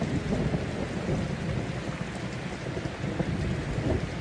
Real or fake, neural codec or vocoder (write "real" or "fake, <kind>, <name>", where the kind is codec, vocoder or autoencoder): real